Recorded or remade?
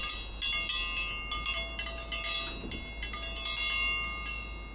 recorded